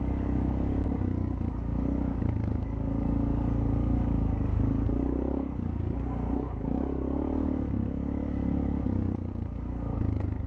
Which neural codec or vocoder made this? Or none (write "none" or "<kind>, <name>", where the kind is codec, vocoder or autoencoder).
codec, DAC